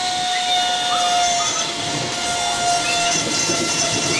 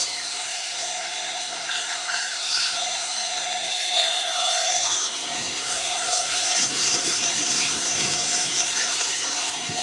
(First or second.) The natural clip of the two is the first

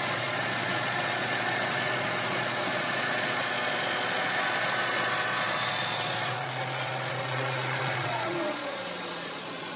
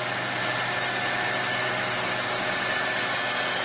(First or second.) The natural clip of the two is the second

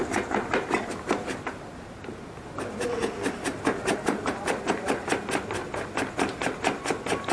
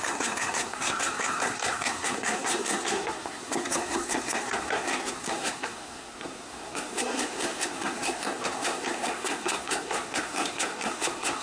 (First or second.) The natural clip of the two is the first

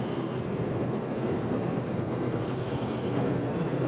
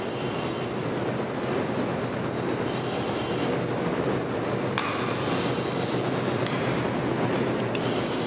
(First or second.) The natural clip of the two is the second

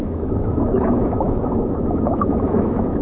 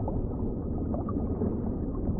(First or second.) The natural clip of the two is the second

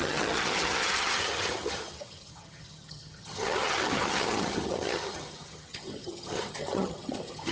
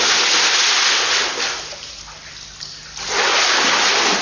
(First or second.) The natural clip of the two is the second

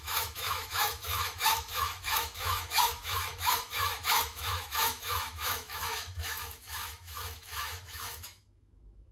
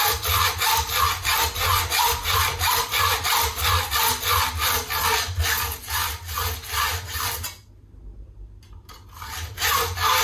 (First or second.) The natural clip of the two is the second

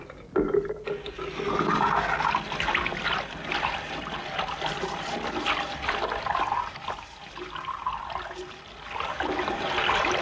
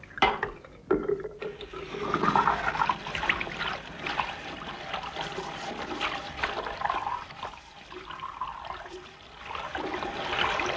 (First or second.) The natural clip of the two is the first